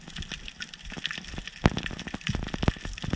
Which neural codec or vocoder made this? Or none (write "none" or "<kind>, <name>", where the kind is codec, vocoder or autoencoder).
none